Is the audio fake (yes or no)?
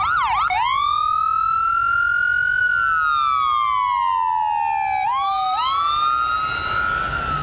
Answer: no